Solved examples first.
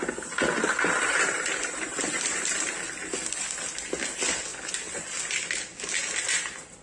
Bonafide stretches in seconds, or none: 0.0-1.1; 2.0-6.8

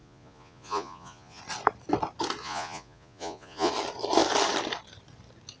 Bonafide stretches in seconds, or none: 1.4-2.4; 3.7-5.6

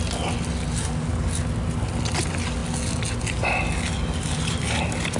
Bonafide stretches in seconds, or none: 0.0-5.2

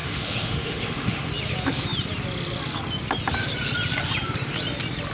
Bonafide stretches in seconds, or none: 1.3-5.1